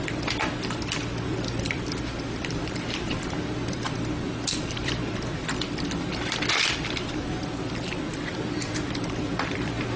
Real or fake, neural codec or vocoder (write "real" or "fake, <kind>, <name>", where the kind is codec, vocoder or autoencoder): fake, vocoder, BigVGAN v2